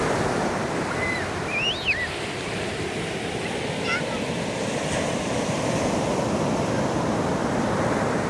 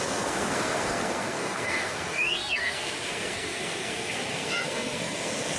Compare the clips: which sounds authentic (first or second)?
first